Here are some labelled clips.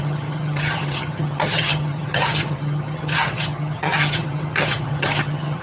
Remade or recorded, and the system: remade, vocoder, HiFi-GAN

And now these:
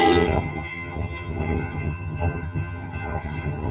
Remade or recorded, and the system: remade, vocoder, HiFi-GAN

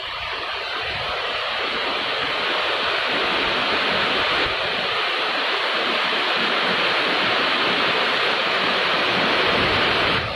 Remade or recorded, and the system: remade, vocoder, BigVGAN v2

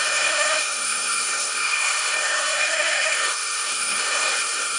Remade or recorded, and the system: remade, codec, SNAC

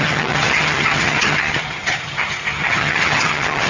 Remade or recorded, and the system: remade, vocoder, HiFi-GAN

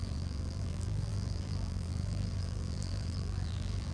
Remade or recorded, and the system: remade, vocoder, BigVGAN v2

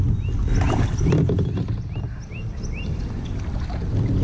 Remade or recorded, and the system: recorded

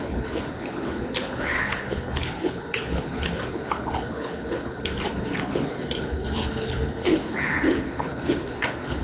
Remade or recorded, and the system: remade, codec, HILCodec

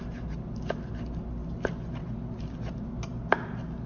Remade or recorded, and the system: recorded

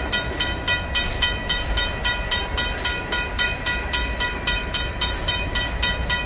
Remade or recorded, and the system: recorded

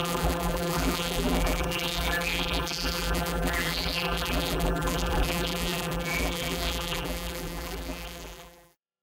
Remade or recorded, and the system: remade, vocoder, BigVGAN v2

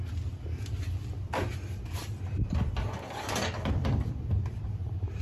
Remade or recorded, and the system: remade, vocoder, BigVGAN v2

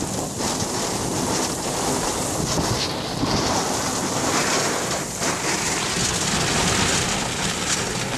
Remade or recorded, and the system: recorded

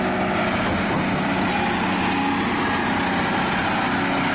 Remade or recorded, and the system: recorded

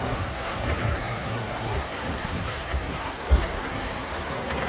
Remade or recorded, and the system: remade, codec, SNAC